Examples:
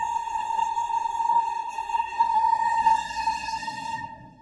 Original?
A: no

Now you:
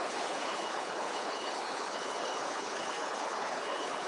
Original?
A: no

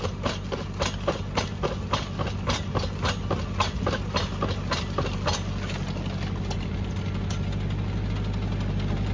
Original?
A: yes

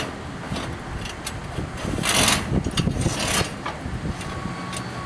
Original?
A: yes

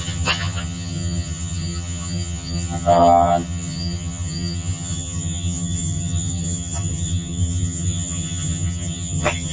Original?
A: no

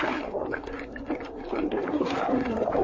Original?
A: no